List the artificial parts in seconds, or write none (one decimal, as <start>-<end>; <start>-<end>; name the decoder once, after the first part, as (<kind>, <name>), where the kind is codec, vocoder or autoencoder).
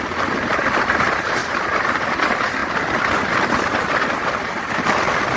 1.4-2.2 (vocoder, BigVGAN v2)